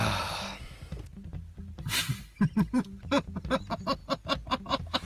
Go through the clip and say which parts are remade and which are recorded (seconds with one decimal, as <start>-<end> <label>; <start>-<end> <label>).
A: 0.0-2.2 recorded; 2.2-4.0 remade; 4.0-5.1 recorded